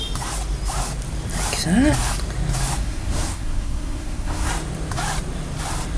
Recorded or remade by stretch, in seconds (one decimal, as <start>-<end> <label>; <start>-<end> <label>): 0.0-2.8 recorded; 2.8-4.5 remade; 4.5-6.0 recorded